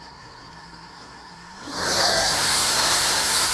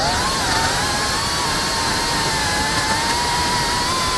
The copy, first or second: first